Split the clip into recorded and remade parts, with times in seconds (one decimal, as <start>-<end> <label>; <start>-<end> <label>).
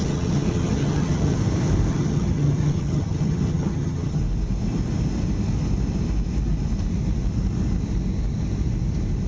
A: 0.0-1.4 remade; 1.4-1.9 recorded; 1.9-4.2 remade; 4.2-9.3 recorded